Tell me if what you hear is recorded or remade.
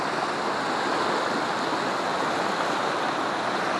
recorded